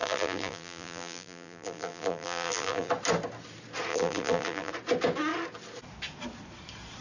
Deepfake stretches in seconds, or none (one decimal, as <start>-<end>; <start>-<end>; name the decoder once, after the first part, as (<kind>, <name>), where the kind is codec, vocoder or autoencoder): 0.0-2.9 (vocoder, BigVGAN v2); 3.9-4.7